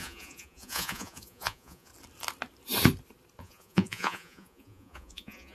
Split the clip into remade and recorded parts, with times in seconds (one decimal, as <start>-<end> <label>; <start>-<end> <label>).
0.0-1.9 remade; 1.9-3.4 recorded; 3.4-5.5 remade